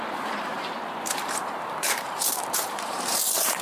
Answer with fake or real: fake